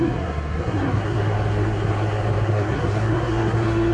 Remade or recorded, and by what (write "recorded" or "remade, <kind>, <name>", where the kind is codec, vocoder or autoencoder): remade, codec, SNAC